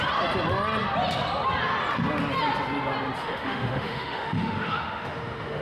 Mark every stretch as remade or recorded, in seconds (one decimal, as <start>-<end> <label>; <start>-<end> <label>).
0.0-3.2 recorded; 3.2-5.6 remade